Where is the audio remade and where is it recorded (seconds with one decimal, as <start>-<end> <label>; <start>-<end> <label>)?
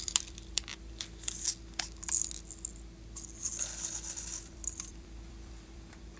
0.0-0.7 remade; 0.7-4.4 recorded; 4.4-6.2 remade